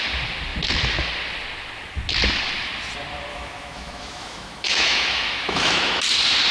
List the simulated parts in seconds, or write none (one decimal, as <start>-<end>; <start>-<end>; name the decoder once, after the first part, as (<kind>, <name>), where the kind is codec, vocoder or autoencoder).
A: 3.3-6.0 (autoencoder, DAC-VAE)